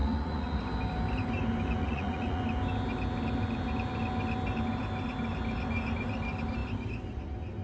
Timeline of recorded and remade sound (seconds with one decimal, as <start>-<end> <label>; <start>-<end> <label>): 0.0-0.6 remade; 0.6-1.8 recorded; 1.8-2.4 remade; 2.4-7.6 recorded